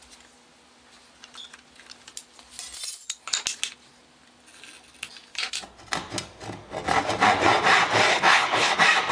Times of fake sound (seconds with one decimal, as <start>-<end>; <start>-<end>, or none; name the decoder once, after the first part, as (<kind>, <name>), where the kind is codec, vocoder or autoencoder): 8.1-8.7 (codec, HILCodec)

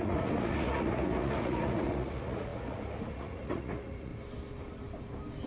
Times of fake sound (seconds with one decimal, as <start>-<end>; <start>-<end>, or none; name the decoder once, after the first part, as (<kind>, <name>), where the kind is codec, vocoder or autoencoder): 0.0-4.1 (vocoder, Vocos)

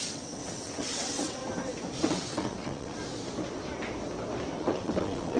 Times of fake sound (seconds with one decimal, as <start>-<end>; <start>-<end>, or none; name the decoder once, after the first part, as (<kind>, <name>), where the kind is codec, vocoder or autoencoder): 0.0-1.4 (vocoder, WaveNeXt); 2.0-3.0; 4.6-5.4

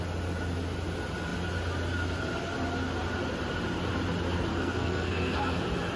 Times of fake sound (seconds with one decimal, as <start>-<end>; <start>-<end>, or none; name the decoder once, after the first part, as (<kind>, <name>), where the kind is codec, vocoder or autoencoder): 4.5-5.6 (codec, SNAC)

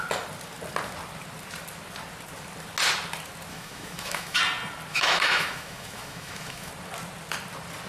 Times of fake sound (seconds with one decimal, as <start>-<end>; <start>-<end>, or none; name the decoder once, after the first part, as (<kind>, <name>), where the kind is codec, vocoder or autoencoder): 3.5-4.4 (autoencoder, DAC-VAE); 4.9-6.7

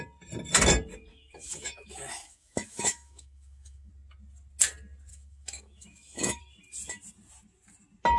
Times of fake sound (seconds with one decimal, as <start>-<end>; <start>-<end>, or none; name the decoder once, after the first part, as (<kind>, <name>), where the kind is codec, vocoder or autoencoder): 1.1-3.9 (autoencoder, DAC-VAE); 5.1-6.4

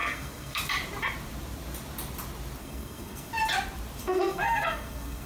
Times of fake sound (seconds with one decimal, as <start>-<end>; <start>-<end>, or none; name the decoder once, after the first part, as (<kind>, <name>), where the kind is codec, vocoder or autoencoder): 0.0-0.6 (codec, SNAC); 2.6-3.3; 4.0-5.3

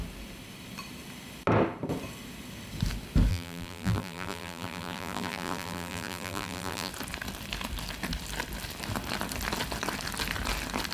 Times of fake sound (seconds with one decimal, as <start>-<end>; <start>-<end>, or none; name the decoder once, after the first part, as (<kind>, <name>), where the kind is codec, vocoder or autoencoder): 3.3-6.9 (vocoder, BigVGAN v2)